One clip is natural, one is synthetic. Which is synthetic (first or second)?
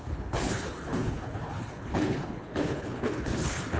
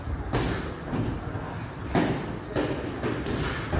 first